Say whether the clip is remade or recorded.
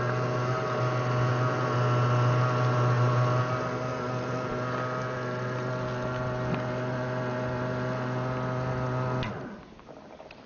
recorded